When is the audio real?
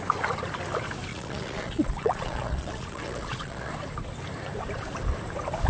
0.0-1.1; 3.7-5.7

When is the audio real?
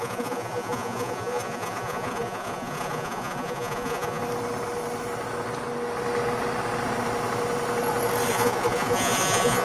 4.2-8.3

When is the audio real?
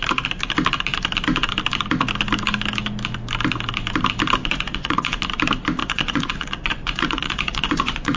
0.0-4.4; 5.2-5.8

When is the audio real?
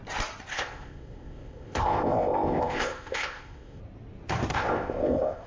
0.0-0.5; 3.8-4.5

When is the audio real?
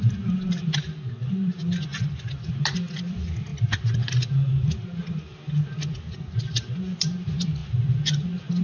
0.0-8.6